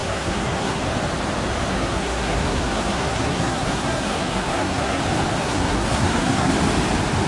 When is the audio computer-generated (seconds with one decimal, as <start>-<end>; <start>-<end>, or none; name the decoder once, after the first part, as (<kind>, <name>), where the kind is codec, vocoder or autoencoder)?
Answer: 0.0-0.8 (codec, SNAC); 1.7-5.0; 5.4-6.5